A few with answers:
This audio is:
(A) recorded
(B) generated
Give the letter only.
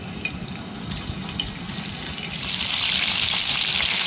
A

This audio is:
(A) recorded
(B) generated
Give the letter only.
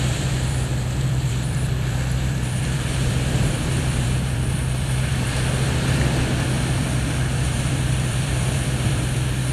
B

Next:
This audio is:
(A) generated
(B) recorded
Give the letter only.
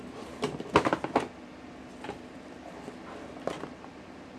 B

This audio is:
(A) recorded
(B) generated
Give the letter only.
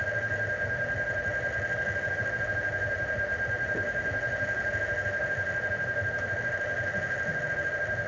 A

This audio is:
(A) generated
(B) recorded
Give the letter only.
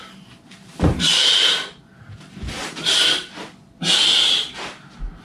B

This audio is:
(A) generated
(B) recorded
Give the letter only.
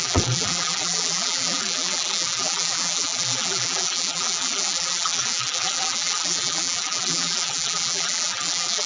A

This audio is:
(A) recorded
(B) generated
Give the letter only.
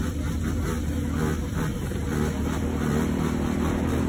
A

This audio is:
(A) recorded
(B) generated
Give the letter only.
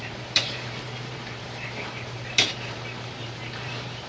B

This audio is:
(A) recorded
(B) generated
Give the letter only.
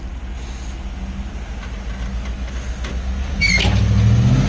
A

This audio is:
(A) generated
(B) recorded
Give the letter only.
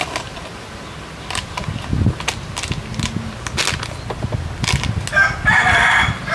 B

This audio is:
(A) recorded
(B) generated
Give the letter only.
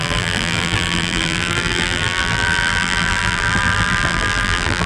B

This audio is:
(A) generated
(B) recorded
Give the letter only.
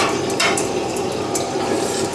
A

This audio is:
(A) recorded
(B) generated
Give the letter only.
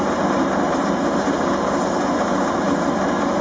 B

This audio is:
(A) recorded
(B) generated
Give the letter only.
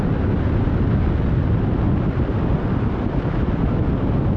A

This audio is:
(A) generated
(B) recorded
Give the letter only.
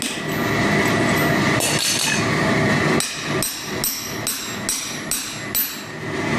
B